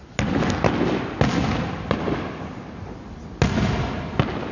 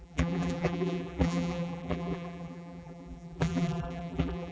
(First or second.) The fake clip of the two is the second